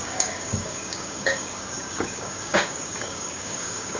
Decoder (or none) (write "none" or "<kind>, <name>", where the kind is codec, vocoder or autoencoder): codec, DAC